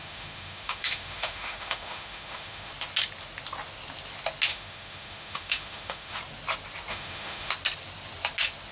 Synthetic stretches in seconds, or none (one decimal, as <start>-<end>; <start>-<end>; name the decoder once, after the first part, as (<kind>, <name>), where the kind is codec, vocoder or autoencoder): 0.0-2.7 (autoencoder, DAC-VAE); 4.5-6.2; 6.9-7.5